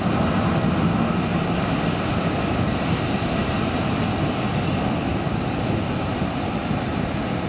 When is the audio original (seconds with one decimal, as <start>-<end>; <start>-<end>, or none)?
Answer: 0.0-1.3; 2.3-5.1; 5.7-7.5